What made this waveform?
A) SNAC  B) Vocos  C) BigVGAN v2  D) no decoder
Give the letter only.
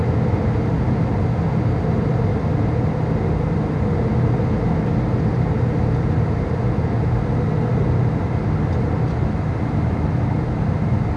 D